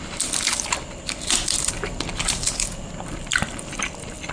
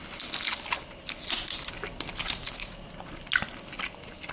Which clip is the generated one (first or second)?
first